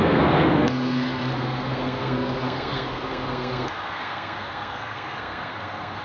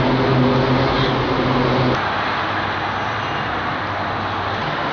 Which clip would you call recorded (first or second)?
second